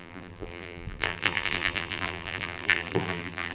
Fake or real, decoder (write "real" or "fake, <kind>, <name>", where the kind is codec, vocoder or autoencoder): fake, vocoder, BigVGAN v2